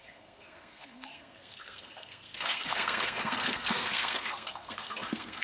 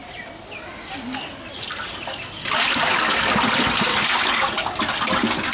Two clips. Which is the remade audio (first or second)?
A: first